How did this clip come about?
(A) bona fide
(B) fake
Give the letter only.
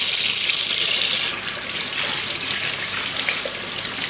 A